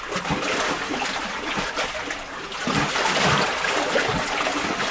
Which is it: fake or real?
real